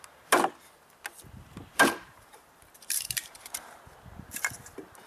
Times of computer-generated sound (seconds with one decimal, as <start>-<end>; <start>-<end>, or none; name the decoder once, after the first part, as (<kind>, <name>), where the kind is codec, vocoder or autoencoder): 1.7-3.8 (vocoder, BigVGAN v2)